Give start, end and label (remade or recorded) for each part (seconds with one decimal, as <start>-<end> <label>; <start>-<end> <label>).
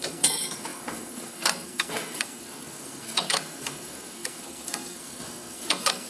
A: 0.0-6.1 remade